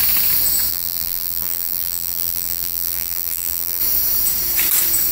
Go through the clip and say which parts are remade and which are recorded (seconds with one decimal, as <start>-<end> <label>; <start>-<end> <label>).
0.0-0.7 recorded; 0.7-3.8 remade; 3.8-5.1 recorded